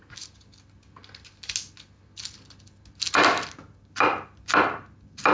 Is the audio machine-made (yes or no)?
no